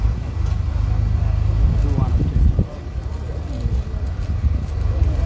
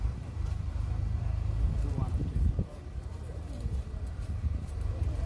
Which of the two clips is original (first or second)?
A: first